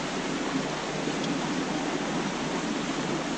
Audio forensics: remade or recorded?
recorded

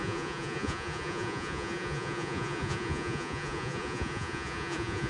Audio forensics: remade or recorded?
remade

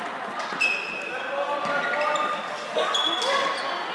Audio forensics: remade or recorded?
recorded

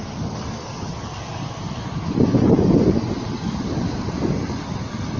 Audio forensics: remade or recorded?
recorded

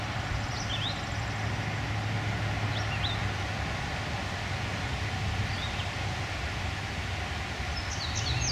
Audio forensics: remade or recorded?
recorded